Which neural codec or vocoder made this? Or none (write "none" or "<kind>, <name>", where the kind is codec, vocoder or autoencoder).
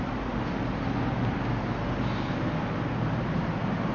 none